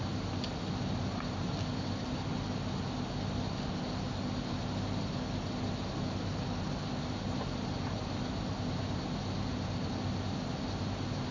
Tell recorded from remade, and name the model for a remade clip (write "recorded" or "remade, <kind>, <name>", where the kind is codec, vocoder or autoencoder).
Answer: recorded